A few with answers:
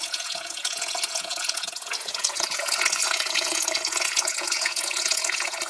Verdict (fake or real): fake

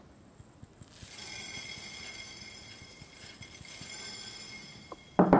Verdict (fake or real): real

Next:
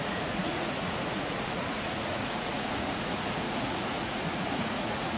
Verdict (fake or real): fake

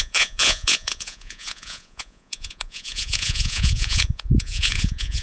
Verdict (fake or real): fake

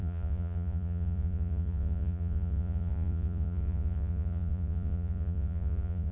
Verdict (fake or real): fake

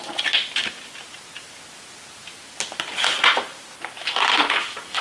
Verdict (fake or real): real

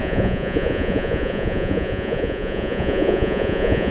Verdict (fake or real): fake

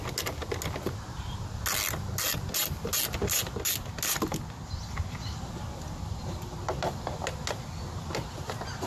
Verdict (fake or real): real